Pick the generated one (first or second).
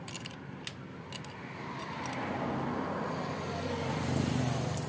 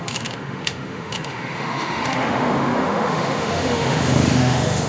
second